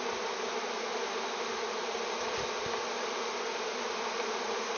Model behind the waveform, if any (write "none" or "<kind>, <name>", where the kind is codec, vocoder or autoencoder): none